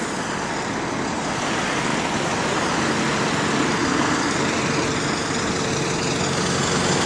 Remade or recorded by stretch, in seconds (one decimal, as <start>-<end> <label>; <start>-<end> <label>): 0.0-7.1 recorded